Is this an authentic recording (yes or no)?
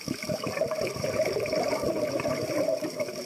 no